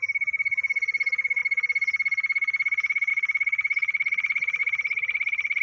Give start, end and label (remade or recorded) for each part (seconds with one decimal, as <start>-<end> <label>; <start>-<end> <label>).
0.0-5.6 recorded